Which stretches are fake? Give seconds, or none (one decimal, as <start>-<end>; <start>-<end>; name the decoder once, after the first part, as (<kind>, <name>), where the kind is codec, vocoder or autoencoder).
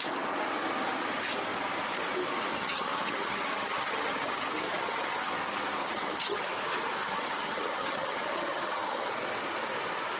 2.5-5.3 (vocoder, HiFi-GAN); 5.8-6.4; 7.0-9.1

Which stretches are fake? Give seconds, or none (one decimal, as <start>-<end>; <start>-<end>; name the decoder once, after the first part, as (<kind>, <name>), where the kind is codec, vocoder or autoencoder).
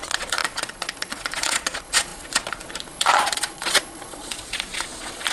0.0-5.3 (vocoder, Vocos)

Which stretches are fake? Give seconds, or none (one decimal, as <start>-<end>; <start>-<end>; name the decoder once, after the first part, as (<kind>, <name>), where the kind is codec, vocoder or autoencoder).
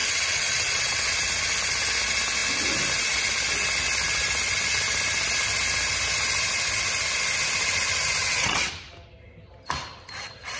0.0-1.2 (vocoder, WaveNeXt); 8.2-8.7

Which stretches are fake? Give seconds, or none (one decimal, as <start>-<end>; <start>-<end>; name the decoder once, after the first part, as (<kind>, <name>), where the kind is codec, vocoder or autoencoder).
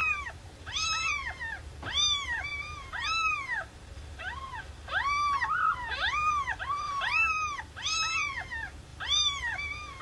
0.0-1.1 (vocoder, BigVGAN v2); 2.5-4.6; 8.9-10.0